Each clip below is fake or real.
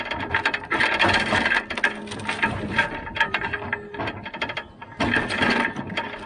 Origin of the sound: real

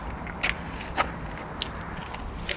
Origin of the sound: real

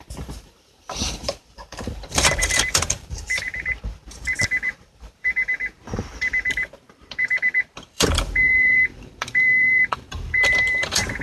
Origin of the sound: fake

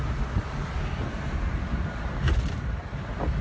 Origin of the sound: real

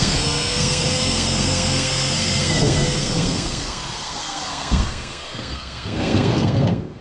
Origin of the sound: fake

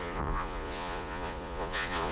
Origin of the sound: fake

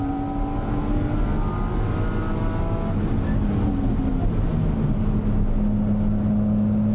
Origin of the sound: real